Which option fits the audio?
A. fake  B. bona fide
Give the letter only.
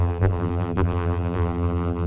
A